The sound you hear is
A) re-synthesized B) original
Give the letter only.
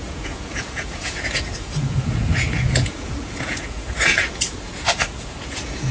A